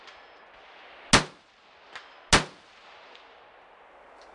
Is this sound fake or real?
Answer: real